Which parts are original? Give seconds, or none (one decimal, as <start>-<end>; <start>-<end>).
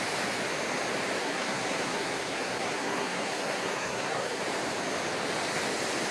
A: 0.0-1.2; 4.4-6.1